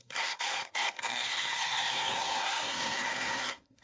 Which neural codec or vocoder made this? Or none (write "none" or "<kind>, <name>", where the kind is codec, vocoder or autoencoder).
codec, SNAC